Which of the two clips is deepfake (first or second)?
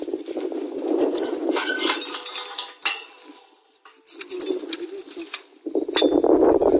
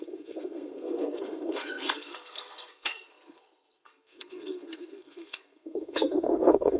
second